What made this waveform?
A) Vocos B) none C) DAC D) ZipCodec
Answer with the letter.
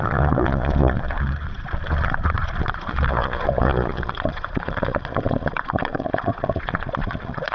A